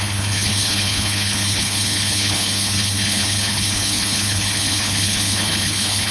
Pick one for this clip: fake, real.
fake